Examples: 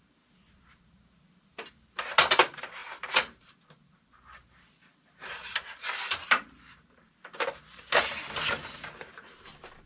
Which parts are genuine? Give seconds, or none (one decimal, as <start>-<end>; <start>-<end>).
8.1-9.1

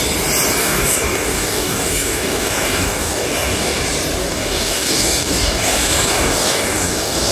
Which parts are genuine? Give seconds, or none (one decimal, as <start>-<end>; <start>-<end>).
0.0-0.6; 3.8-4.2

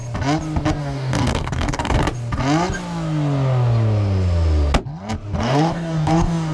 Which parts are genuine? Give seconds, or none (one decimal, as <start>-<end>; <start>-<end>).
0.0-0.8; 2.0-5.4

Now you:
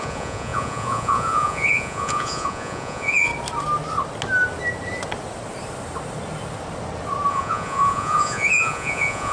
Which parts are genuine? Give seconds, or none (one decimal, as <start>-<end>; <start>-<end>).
3.3-7.3